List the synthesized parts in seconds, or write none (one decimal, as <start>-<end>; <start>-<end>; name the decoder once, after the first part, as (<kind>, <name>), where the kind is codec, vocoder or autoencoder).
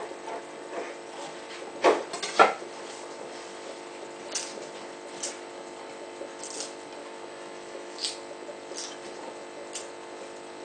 7.0-8.0 (autoencoder, DAC-VAE)